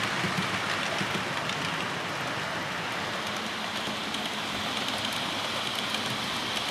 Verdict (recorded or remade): recorded